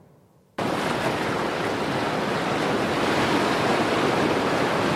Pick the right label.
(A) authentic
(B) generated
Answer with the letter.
A